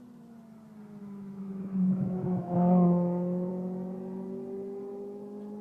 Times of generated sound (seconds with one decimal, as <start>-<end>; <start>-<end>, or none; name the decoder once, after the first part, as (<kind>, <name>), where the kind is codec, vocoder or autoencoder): 1.0-3.5 (autoencoder, DAC-VAE)